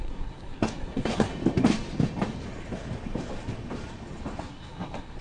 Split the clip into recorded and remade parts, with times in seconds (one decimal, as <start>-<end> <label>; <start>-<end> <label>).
0.0-1.3 remade; 1.3-4.4 recorded; 4.4-5.2 remade